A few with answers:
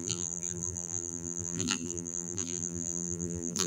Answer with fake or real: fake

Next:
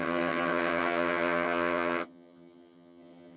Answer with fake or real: fake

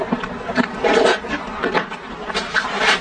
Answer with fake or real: fake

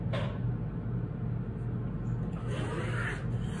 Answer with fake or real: real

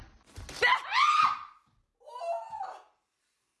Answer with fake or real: real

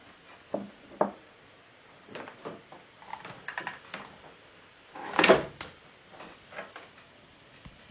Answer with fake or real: real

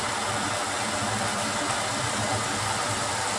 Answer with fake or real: real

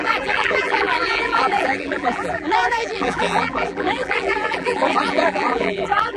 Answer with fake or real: fake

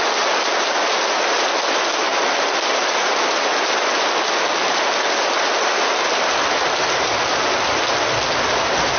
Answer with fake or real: real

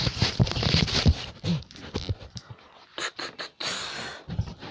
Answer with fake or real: real